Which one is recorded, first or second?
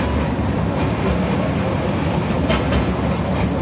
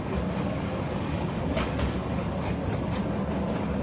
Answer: first